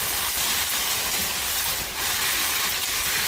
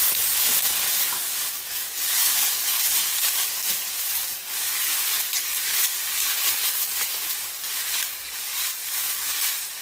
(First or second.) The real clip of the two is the first